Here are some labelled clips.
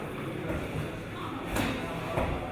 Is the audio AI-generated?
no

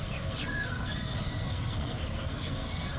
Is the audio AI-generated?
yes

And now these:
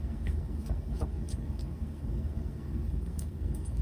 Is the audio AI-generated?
yes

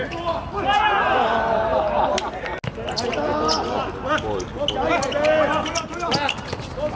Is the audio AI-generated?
no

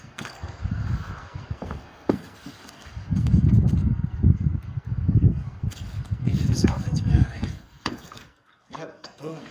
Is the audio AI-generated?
yes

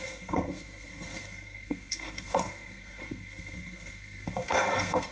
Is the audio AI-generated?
yes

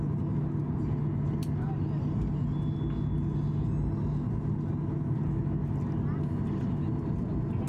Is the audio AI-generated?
no